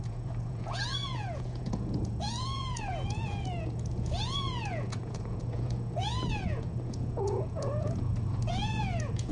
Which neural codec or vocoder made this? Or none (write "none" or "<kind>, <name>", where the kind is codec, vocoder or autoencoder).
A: vocoder, Vocos